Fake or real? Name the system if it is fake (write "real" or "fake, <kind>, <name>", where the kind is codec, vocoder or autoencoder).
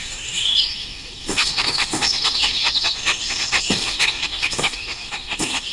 fake, codec, DAC